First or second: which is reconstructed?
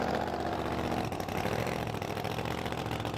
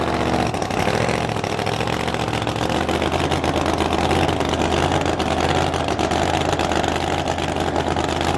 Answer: first